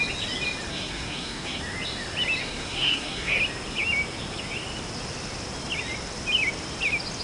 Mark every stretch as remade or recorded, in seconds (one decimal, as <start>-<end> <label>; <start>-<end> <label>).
0.0-0.7 recorded; 0.7-1.6 remade; 1.6-2.4 recorded; 2.4-3.4 remade; 3.4-7.2 recorded